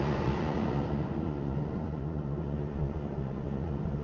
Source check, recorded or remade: remade